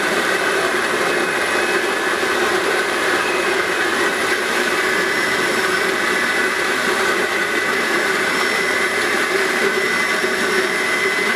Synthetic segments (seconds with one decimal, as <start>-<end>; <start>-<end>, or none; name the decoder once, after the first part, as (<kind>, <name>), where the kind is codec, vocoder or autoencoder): 0.0-1.1 (vocoder, BigVGAN v2); 2.5-3.9; 4.4-11.4